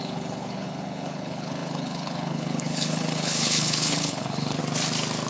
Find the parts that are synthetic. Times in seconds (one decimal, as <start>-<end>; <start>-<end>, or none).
0.0-4.6